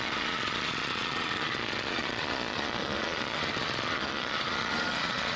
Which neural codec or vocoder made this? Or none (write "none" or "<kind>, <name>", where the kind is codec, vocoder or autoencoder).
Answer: vocoder, Vocos